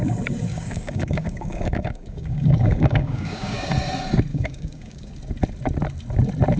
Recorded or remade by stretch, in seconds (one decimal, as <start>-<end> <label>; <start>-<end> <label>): 0.0-0.5 recorded; 0.5-3.7 remade; 3.7-4.3 recorded; 4.3-5.1 remade; 5.1-6.6 recorded